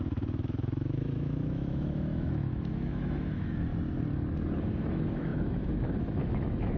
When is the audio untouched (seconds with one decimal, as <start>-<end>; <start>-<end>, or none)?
3.7-4.8